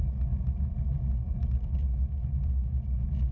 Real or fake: real